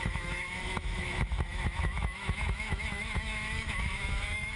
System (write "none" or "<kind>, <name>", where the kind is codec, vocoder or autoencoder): autoencoder, DAC-VAE